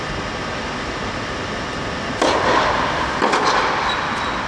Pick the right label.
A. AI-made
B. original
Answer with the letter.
B